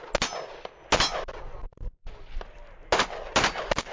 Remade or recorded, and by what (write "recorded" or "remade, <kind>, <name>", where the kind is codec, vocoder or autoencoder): recorded